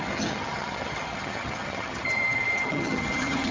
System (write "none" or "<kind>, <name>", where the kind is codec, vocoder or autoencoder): vocoder, HiFi-GAN